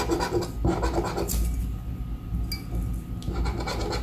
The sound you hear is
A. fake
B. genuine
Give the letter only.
B